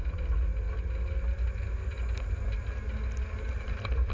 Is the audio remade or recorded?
recorded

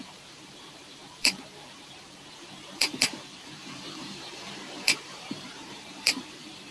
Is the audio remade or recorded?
remade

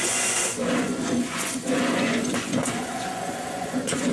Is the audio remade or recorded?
remade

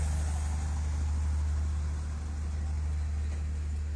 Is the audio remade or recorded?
recorded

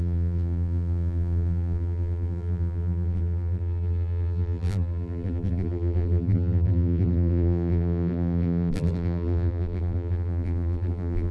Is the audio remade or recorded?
remade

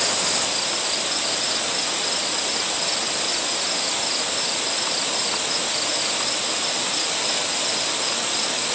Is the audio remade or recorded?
recorded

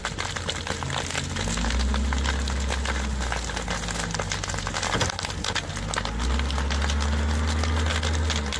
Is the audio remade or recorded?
recorded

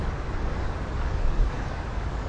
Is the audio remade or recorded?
remade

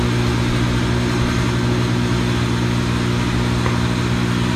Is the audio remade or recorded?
recorded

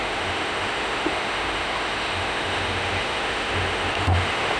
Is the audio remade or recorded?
remade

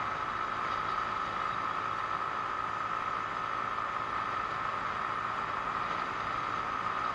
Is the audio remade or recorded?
recorded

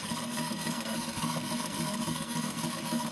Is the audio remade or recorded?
remade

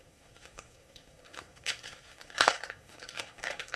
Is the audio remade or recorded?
remade